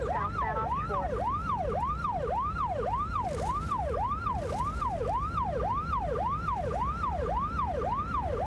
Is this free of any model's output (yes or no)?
yes